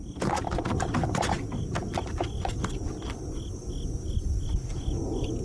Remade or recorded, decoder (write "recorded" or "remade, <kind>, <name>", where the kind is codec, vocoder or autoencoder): recorded